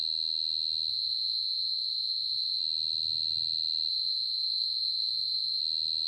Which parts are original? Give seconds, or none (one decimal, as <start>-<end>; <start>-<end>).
0.0-0.9; 2.6-3.9; 5.6-6.1